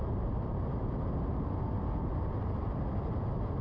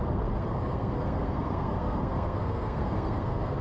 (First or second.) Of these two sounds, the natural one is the first